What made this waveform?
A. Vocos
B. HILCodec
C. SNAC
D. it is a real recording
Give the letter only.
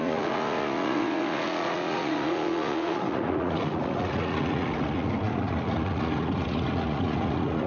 A